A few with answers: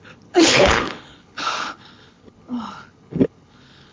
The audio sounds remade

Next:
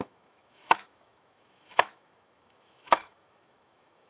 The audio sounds remade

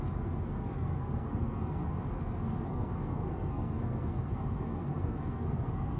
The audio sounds remade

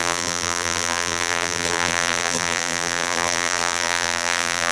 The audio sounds remade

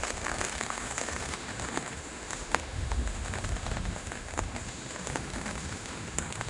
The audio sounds remade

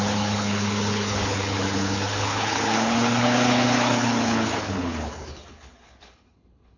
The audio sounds remade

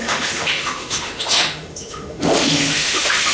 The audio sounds remade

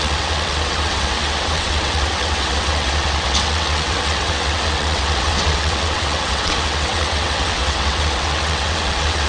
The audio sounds remade